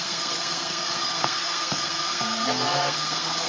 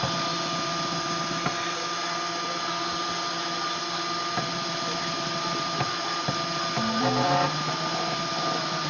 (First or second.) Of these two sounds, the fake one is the first